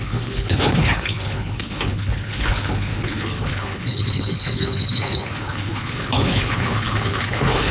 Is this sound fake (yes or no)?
yes